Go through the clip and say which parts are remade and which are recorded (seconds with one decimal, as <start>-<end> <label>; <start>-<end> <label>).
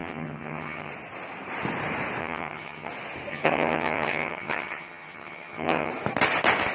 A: 0.0-0.9 remade; 0.9-2.2 recorded; 2.2-2.9 remade; 2.9-3.3 recorded; 3.3-5.9 remade; 5.9-6.7 recorded